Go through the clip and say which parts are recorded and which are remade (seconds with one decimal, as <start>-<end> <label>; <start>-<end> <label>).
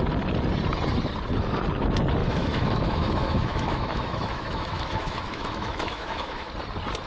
0.0-2.2 recorded; 2.2-6.5 remade; 6.5-7.1 recorded